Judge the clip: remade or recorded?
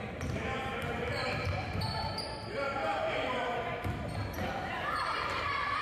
remade